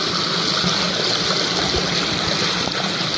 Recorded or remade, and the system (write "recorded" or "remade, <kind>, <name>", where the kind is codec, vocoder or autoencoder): recorded